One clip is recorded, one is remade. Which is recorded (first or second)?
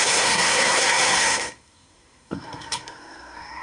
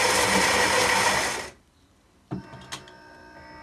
second